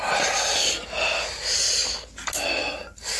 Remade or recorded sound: recorded